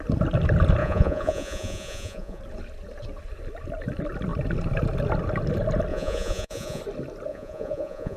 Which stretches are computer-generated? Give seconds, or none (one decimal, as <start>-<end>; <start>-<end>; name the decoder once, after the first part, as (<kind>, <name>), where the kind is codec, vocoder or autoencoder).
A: 0.8-2.4 (vocoder, Vocos); 5.9-6.8; 7.3-8.2